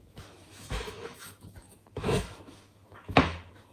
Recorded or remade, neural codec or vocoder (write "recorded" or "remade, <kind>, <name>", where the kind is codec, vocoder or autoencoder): remade, autoencoder, DAC-VAE